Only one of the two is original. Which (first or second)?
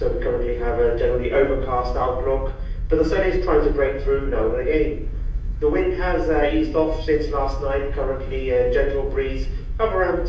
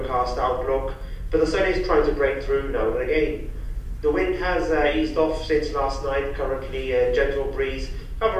second